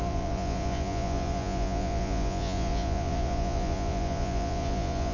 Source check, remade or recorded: remade